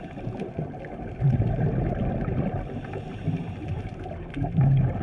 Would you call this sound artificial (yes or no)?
no